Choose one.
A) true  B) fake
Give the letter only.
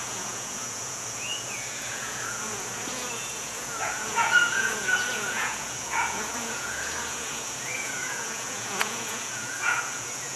B